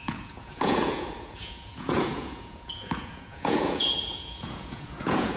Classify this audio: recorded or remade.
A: remade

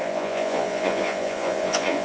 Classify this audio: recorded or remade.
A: remade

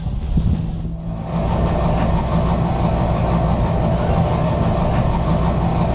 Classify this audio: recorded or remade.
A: recorded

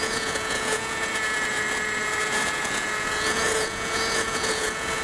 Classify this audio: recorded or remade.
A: remade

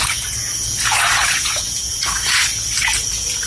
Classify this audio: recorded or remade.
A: remade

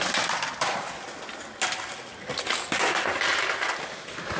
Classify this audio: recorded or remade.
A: recorded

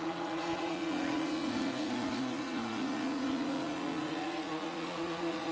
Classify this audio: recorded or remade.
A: remade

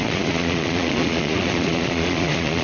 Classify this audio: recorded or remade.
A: remade